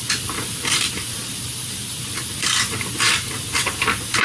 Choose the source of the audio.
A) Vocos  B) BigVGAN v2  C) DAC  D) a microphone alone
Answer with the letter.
B